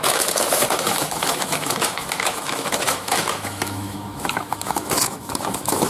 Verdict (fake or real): fake